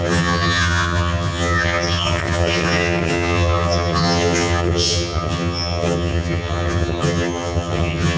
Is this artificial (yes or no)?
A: yes